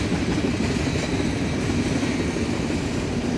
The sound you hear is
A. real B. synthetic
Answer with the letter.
A